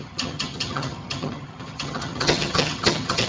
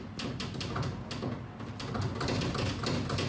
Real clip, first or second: second